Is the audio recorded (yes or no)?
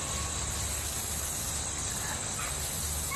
yes